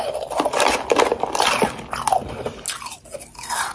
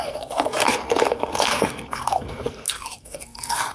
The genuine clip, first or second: first